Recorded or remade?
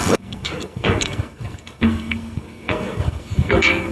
remade